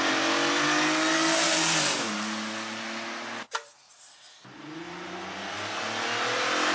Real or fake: real